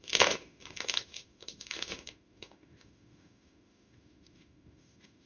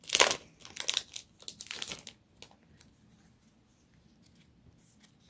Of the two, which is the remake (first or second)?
first